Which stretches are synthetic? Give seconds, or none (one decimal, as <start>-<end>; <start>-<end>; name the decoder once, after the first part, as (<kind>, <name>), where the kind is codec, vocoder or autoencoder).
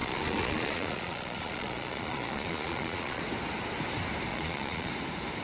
0.0-3.2 (vocoder, Vocos); 4.3-4.9